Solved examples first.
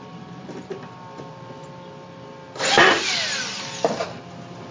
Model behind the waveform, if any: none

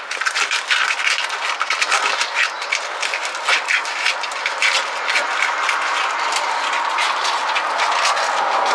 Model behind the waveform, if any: none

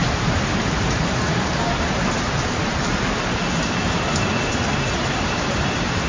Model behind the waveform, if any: vocoder, BigVGAN v2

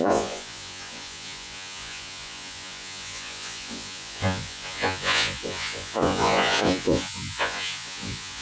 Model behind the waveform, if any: vocoder, Vocos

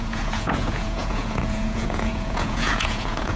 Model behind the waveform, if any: vocoder, Vocos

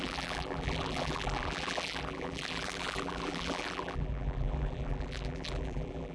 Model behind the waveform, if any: vocoder, BigVGAN v2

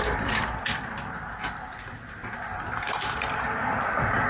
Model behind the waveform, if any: vocoder, BigVGAN v2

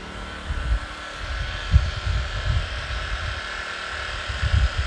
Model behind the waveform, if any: vocoder, BigVGAN v2